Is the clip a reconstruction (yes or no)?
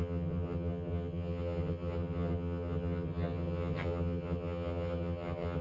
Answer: yes